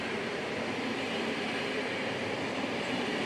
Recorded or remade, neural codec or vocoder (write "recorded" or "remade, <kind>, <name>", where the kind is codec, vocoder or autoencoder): remade, vocoder, BigVGAN v2